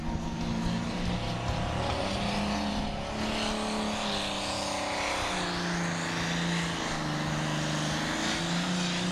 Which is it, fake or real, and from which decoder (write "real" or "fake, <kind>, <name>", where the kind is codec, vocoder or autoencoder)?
real